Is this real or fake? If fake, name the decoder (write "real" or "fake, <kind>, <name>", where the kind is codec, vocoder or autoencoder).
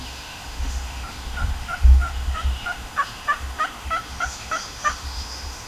fake, autoencoder, DAC-VAE